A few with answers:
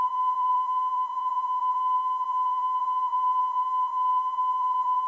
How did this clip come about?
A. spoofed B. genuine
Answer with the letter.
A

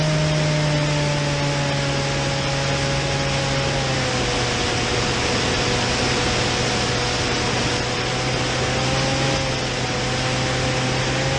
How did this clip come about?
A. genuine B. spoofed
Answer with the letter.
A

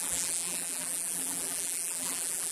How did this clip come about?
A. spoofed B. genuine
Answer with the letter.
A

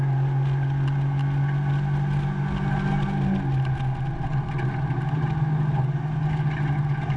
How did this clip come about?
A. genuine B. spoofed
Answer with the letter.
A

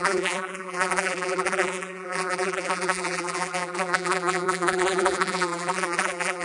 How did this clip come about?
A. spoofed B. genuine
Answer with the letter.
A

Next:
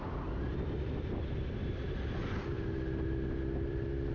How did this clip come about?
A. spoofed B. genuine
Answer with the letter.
A